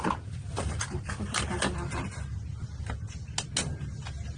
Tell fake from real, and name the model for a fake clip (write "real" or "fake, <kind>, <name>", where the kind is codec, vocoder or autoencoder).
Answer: real